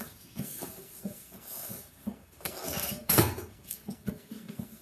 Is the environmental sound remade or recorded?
remade